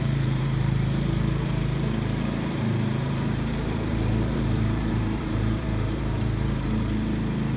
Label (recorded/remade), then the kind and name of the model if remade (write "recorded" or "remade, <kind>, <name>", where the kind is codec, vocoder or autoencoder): remade, vocoder, BigVGAN v2